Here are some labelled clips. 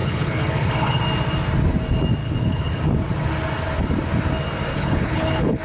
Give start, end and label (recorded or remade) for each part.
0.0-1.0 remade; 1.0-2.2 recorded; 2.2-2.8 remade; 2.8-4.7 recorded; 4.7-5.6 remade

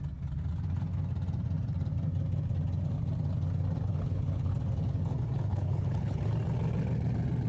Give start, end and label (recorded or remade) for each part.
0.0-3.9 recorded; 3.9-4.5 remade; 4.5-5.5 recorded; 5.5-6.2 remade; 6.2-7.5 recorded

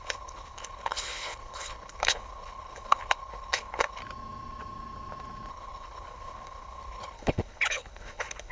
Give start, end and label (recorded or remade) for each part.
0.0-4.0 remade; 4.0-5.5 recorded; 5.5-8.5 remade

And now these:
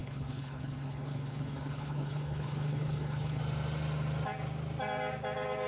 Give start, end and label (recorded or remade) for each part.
0.0-3.4 remade; 3.4-5.7 recorded

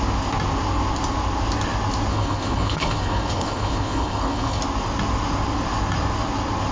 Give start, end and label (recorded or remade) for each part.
0.0-2.1 recorded; 2.1-4.6 remade; 4.6-6.7 recorded

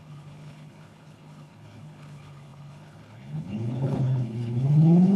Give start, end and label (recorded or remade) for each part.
0.0-5.2 remade

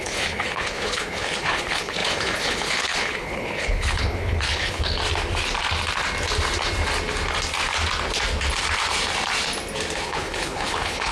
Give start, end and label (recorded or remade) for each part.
0.0-5.0 remade; 5.0-10.0 recorded; 10.0-11.1 remade